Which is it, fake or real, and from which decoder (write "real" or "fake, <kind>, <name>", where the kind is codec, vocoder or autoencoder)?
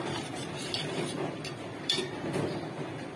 fake, vocoder, BigVGAN v2